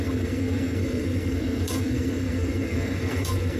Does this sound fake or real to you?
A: fake